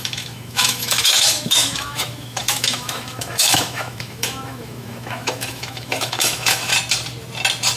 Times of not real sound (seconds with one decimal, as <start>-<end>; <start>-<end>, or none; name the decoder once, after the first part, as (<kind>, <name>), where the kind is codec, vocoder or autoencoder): 0.0-6.7 (autoencoder, DAC-VAE)